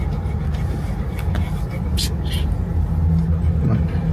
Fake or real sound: real